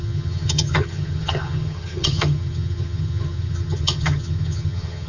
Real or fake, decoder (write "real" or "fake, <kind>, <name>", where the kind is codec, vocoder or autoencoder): fake, vocoder, HiFi-GAN